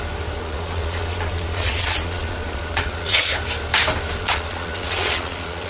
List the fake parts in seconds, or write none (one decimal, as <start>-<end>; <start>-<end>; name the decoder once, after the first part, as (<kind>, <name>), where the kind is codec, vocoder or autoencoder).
0.4-3.3 (vocoder, Vocos); 4.2-5.7